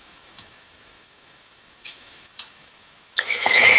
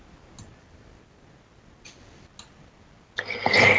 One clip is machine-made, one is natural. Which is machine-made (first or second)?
first